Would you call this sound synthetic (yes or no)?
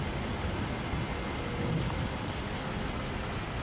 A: no